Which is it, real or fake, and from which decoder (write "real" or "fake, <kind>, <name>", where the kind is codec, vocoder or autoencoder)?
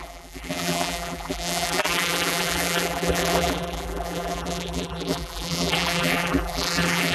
fake, vocoder, BigVGAN v2